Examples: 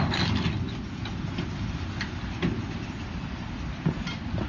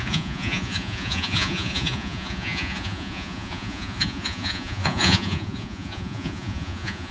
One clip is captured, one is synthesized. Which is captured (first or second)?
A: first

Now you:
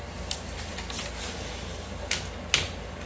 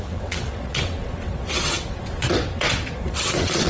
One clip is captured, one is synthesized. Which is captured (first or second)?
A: first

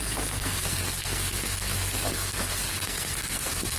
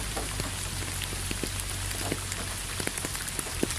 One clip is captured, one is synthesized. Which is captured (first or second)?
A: second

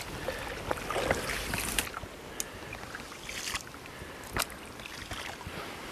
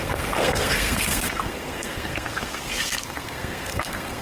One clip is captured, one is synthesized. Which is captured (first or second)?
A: first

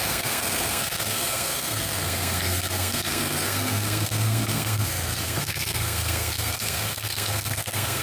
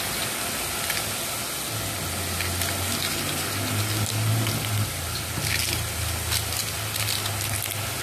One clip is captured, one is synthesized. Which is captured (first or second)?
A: second